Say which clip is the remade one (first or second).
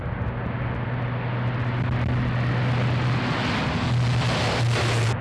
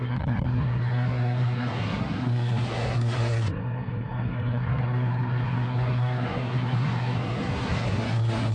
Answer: second